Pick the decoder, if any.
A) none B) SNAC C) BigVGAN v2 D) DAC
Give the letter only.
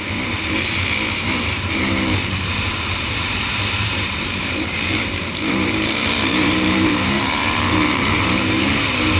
C